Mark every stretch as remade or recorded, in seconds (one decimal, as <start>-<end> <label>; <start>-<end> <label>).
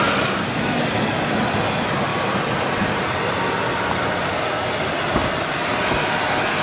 0.0-5.2 recorded; 5.2-5.7 remade; 5.7-6.6 recorded